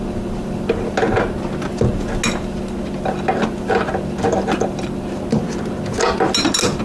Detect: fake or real real